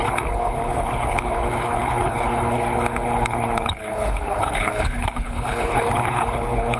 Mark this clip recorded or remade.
remade